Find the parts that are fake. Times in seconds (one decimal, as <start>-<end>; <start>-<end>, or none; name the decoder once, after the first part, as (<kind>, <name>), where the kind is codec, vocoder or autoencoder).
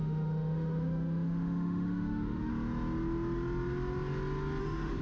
0.0-2.5 (autoencoder, DAC-VAE); 4.6-5.0